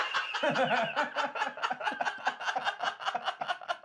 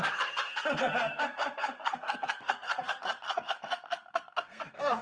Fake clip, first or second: second